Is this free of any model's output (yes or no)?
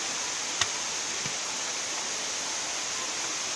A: yes